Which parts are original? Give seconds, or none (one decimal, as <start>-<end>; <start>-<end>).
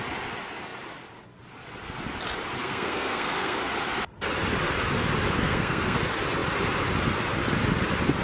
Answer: 0.0-2.6; 3.6-5.4; 6.0-8.2